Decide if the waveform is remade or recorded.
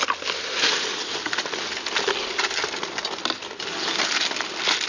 recorded